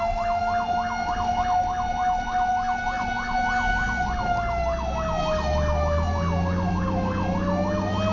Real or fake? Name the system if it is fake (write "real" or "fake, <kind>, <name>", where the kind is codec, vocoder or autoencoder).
real